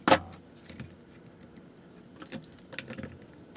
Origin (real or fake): real